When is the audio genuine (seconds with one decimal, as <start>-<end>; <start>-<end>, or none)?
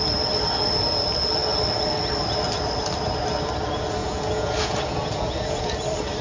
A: 0.0-4.0; 5.7-6.2